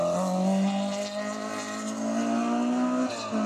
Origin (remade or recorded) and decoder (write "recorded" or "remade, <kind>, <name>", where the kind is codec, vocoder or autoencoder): recorded